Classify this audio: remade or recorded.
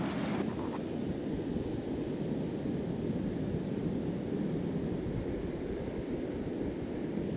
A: recorded